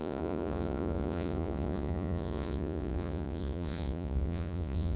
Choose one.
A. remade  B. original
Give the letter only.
A